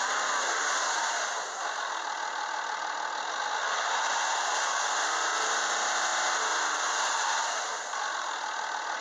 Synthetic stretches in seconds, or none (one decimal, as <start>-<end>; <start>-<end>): none